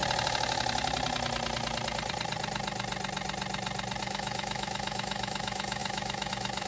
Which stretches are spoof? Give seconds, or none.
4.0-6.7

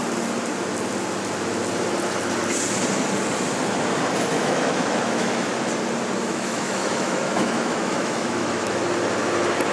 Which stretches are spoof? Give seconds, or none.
4.3-5.5; 6.2-8.8

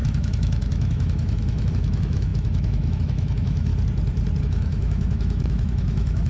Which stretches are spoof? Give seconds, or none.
0.0-3.7; 4.4-6.3